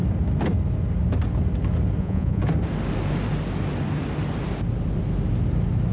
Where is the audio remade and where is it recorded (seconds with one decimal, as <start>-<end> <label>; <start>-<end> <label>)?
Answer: 0.0-2.0 recorded; 2.0-2.4 remade; 2.4-5.9 recorded